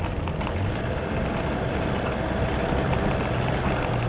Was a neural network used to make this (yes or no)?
no